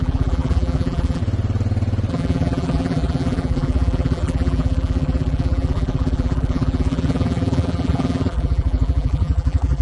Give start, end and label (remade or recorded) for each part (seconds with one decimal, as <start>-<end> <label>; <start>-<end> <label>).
0.0-1.2 remade; 1.2-2.1 recorded; 2.1-9.8 remade